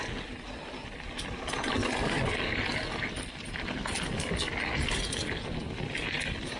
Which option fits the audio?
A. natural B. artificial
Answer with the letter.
A